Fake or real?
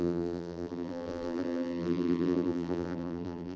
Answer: fake